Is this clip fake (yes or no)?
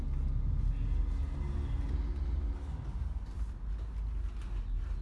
no